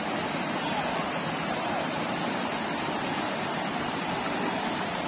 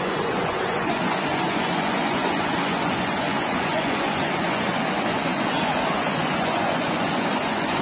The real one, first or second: first